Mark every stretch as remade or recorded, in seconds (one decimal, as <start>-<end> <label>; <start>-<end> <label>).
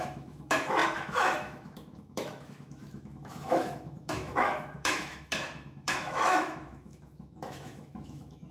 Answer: 0.0-8.5 remade